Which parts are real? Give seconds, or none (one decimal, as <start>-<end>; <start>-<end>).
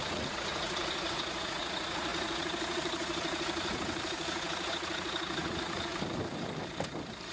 5.9-7.3